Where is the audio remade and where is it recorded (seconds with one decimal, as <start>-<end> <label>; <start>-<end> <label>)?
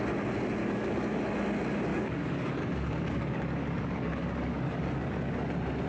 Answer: 0.0-0.6 recorded; 0.6-1.2 remade; 1.2-1.9 recorded; 1.9-5.4 remade; 5.4-5.9 recorded